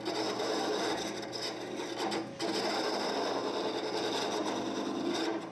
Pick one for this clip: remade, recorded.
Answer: recorded